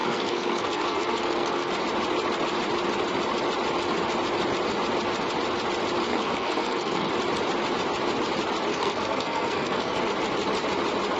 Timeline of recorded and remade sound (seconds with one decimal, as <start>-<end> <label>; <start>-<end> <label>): 0.0-1.7 remade; 1.7-6.1 recorded; 6.1-7.1 remade; 7.1-8.7 recorded; 8.7-10.0 remade; 10.0-11.2 recorded